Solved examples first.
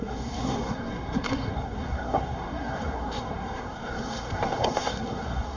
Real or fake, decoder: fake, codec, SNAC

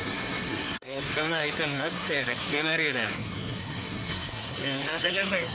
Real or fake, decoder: fake, codec, SNAC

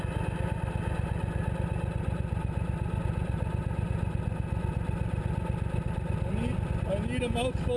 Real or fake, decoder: real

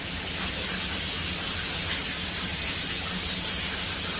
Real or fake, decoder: real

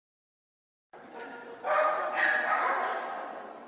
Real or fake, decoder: real